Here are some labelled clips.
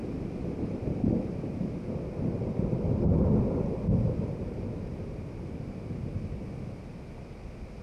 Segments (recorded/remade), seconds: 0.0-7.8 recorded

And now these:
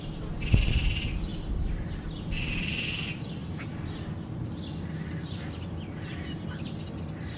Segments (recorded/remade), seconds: 0.0-7.4 recorded